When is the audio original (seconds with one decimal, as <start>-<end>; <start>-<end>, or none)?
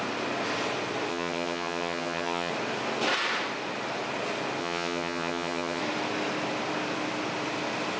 0.0-1.1; 2.5-4.6; 5.8-8.0